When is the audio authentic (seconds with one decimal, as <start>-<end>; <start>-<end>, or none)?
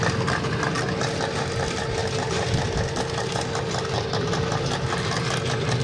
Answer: 0.0-5.8